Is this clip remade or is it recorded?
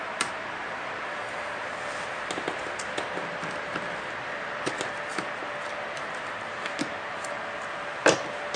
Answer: recorded